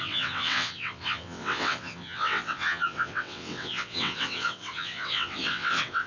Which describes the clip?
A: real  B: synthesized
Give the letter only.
B